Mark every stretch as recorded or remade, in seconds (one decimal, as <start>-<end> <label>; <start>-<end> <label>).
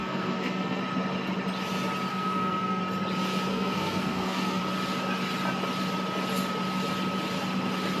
0.0-0.8 remade; 0.8-2.1 recorded; 2.1-2.8 remade; 2.8-3.5 recorded; 3.5-4.6 remade; 4.6-8.0 recorded